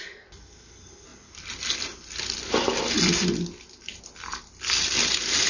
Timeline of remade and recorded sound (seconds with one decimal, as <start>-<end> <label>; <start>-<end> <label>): 0.0-5.5 recorded